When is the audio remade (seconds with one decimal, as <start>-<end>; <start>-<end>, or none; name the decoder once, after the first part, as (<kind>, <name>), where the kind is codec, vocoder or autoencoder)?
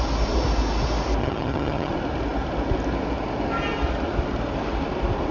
1.2-1.9 (vocoder, HiFi-GAN)